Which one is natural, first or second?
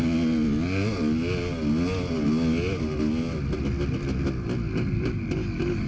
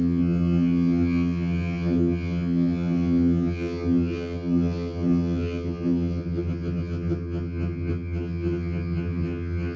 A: first